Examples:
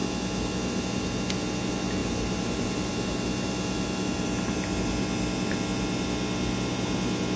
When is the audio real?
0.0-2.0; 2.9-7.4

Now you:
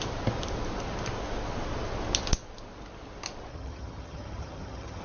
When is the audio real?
0.0-3.5

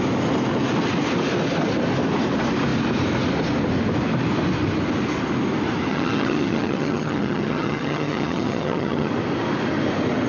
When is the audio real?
0.0-5.9; 9.1-10.3